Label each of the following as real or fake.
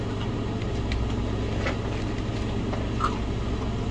real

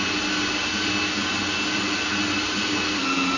real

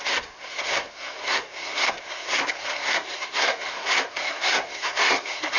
fake